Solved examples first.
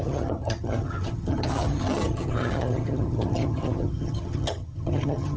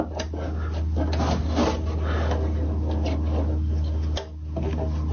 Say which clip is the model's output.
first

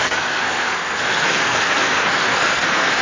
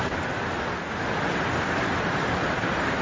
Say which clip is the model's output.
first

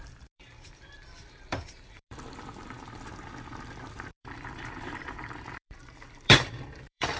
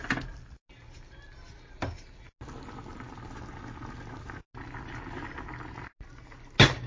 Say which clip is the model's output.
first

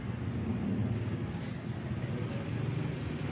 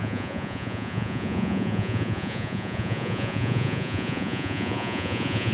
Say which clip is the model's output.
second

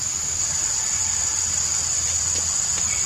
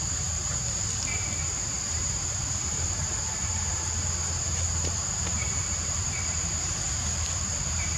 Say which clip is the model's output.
second